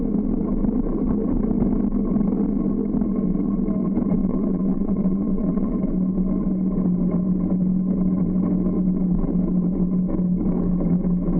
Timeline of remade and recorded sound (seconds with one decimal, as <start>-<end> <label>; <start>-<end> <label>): 0.0-4.2 recorded; 4.2-5.7 remade; 5.7-11.4 recorded